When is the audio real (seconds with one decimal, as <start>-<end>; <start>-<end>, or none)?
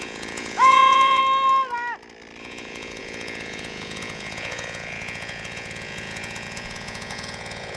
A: 1.2-2.4